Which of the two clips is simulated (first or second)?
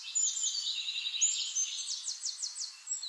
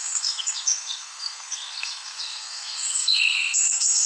second